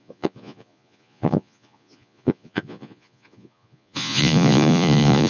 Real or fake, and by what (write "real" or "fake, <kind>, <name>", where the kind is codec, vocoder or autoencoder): fake, vocoder, Vocos